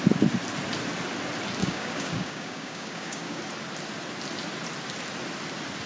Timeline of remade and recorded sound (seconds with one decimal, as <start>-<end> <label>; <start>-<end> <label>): 0.0-1.6 recorded; 1.6-3.4 remade; 3.4-5.9 recorded